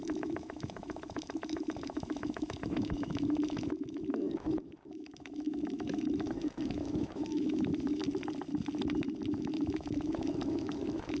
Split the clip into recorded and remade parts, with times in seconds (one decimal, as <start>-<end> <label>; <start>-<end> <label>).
0.0-8.0 remade; 8.0-9.3 recorded; 9.3-11.2 remade